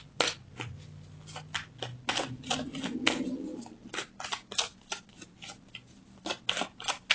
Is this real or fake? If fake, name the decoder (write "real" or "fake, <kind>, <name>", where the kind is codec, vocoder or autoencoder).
real